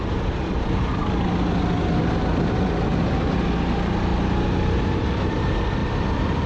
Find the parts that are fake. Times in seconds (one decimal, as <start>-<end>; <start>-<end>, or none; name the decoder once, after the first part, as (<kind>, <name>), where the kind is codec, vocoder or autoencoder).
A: 0.0-0.9 (vocoder, BigVGAN v2); 4.1-4.8; 5.8-6.5